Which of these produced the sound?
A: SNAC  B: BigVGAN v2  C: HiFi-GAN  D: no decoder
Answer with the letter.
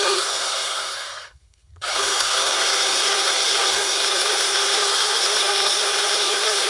A